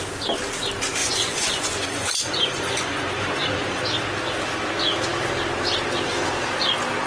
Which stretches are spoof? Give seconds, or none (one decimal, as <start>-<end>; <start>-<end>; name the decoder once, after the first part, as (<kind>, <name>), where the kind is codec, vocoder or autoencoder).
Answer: 1.0-3.8 (vocoder, Vocos)